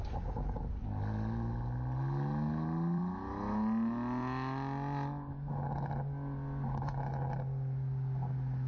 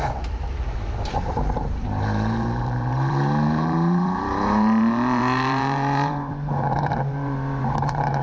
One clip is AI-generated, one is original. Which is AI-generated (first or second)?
second